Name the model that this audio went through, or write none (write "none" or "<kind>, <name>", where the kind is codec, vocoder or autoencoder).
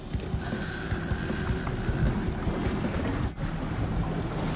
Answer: none